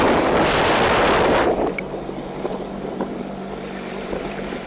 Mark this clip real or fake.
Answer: real